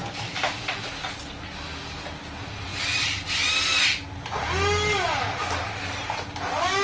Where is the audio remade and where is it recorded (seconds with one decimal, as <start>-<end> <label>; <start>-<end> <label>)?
0.0-6.8 recorded